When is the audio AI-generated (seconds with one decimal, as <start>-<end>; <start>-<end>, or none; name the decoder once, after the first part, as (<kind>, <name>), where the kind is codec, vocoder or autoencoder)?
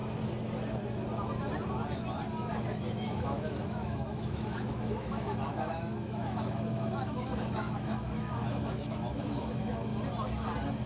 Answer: 2.7-9.9 (autoencoder, DAC-VAE)